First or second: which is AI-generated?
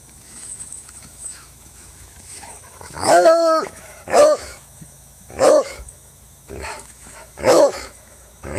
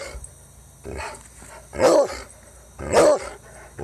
first